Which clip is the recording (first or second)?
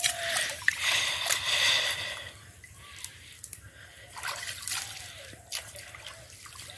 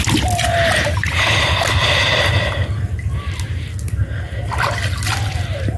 second